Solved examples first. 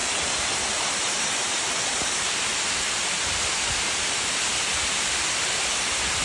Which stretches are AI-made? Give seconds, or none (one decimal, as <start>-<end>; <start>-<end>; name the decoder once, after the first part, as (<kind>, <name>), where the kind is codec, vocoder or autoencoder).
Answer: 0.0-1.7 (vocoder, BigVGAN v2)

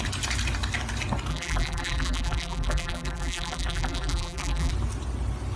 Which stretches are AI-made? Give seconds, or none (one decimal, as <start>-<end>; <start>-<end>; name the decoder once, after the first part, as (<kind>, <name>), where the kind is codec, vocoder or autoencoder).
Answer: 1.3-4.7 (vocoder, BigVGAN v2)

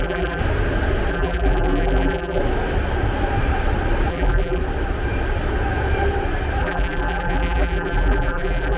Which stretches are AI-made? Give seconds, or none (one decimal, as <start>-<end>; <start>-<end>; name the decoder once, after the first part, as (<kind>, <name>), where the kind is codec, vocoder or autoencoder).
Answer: 0.0-0.4 (vocoder, BigVGAN v2); 1.1-2.4; 4.1-4.6; 6.6-8.8

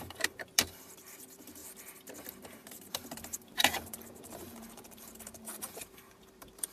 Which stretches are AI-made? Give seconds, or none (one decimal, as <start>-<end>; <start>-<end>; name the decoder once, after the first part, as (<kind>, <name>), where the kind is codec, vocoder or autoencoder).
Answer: 0.0-1.6 (vocoder, BigVGAN v2); 2.7-6.7

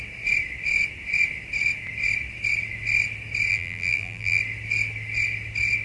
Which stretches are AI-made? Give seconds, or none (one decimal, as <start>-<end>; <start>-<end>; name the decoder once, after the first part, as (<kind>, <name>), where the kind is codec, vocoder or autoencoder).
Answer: 3.5-4.4 (vocoder, BigVGAN v2)

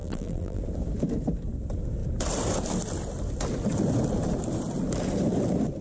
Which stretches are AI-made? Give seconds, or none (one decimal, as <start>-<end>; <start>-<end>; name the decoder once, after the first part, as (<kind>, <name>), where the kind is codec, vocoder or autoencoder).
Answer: 0.0-0.6 (vocoder, BigVGAN v2)